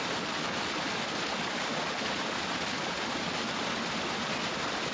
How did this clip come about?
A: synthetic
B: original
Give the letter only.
B